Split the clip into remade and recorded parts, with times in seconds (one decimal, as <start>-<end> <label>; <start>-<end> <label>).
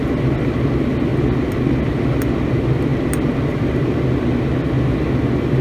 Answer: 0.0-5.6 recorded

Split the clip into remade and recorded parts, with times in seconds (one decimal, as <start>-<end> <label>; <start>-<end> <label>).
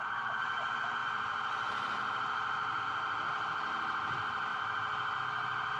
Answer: 0.0-5.8 recorded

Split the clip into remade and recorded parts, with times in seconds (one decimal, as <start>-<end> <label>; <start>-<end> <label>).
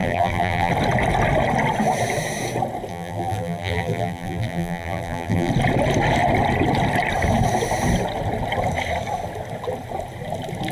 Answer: 0.0-0.7 remade; 0.7-2.9 recorded; 2.9-5.5 remade; 5.5-10.7 recorded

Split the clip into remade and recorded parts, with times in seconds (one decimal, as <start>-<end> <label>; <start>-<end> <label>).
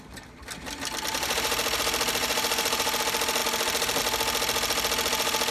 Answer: 0.0-1.1 recorded; 1.1-1.8 remade; 1.8-2.2 recorded; 2.2-3.0 remade; 3.0-5.5 recorded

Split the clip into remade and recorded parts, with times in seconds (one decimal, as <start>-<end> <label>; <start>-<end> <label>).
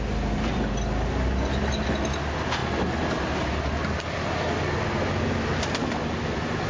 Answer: 0.0-6.7 recorded